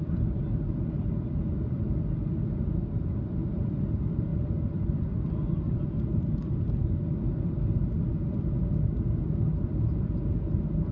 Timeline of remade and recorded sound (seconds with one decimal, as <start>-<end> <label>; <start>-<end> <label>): 0.0-10.9 recorded